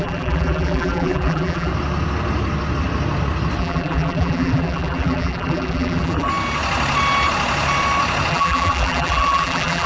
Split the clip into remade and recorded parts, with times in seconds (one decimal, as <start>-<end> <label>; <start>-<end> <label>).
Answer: 0.0-1.7 remade; 1.7-3.6 recorded; 3.6-6.3 remade; 6.3-8.3 recorded; 8.3-9.9 remade